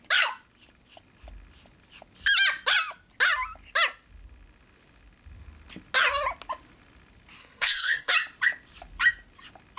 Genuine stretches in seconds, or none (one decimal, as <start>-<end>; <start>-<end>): 0.0-7.4; 8.1-9.8